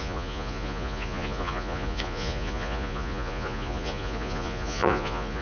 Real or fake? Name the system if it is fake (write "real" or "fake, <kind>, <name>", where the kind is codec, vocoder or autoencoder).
fake, vocoder, Vocos